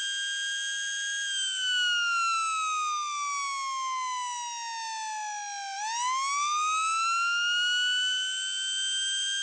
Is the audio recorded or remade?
recorded